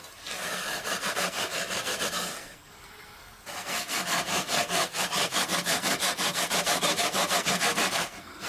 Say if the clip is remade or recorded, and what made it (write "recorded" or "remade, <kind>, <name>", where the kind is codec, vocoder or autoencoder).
remade, codec, SNAC